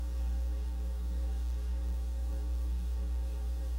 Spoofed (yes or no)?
yes